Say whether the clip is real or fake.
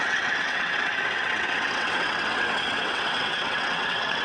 fake